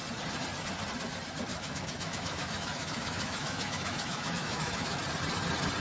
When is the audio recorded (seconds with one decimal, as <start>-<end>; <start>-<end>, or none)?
0.0-1.5; 5.0-5.8